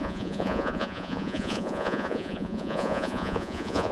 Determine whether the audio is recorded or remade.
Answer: remade